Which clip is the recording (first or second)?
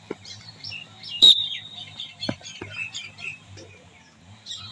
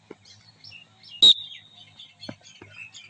second